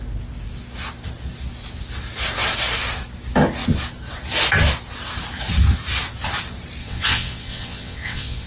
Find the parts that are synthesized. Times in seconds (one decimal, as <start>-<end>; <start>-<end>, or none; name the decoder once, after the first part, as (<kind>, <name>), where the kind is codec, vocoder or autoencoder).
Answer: 6.8-8.5 (vocoder, WaveNeXt)